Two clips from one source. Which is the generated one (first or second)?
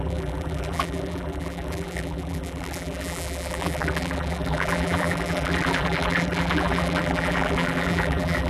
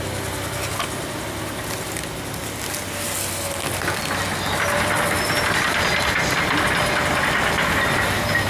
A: first